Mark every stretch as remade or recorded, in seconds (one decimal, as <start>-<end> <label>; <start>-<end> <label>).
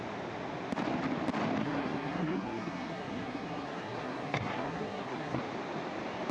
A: 0.0-1.6 recorded; 1.6-5.4 remade; 5.4-6.3 recorded